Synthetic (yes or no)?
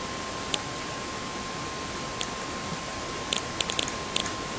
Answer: no